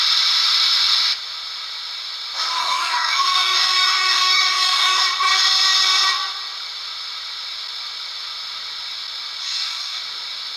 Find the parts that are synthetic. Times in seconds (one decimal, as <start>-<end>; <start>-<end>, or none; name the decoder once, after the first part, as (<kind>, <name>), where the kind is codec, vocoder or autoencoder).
2.6-5.0 (codec, DAC); 9.4-10.0